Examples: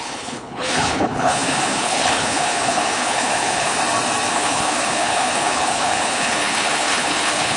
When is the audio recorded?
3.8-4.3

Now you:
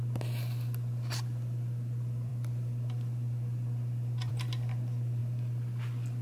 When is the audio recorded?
0.0-6.2

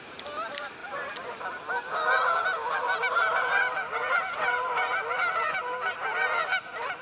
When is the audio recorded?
0.0-7.0

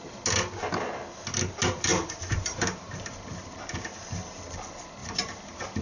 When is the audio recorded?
0.0-1.9; 4.6-5.0

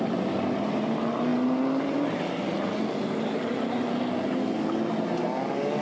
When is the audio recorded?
0.0-5.8

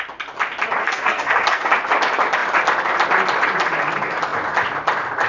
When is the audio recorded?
0.0-0.8; 1.7-5.3

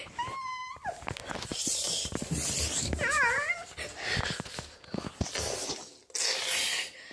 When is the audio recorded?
0.0-7.1